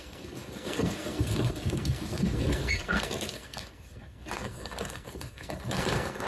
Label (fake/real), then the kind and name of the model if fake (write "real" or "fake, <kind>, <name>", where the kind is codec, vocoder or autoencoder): fake, codec, SNAC